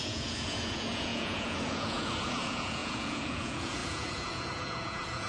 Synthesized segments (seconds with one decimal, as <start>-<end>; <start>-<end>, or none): 0.0-5.3